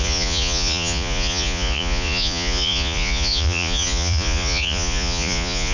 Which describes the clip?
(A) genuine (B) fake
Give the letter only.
B